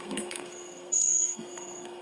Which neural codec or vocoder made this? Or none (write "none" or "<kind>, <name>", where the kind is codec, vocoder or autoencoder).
codec, SNAC